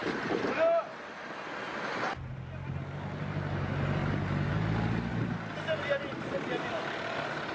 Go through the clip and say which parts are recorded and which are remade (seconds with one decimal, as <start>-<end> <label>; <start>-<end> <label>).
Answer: 0.0-7.5 recorded